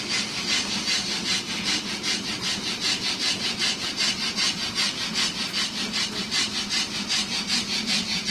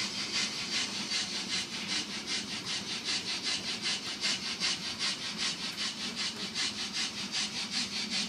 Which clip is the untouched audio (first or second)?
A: first